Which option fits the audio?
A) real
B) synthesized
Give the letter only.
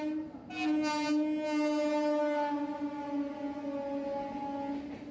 A